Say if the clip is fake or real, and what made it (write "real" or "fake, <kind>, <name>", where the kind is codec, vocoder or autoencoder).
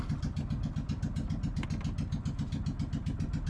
real